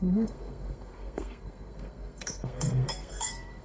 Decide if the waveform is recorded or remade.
remade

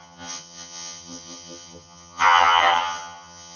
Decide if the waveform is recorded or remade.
remade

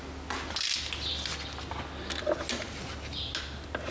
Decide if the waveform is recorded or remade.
recorded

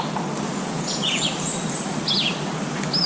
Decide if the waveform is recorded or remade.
recorded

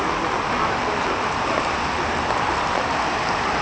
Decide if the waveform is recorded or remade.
recorded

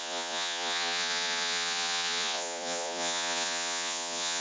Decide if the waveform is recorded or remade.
remade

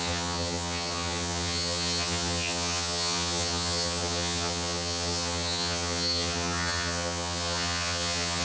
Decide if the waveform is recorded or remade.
remade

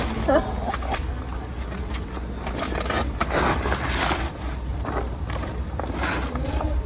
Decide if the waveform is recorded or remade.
recorded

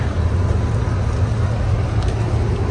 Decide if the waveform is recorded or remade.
recorded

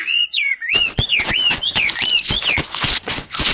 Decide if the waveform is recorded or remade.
remade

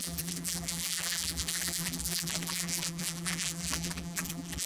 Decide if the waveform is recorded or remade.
remade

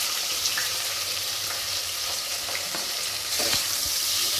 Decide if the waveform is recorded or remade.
remade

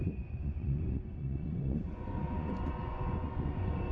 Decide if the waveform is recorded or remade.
remade